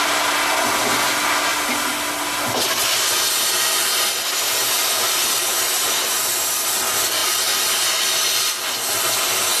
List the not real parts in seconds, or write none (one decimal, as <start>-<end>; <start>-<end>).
none